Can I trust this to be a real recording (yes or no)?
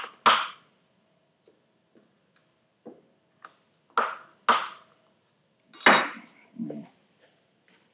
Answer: yes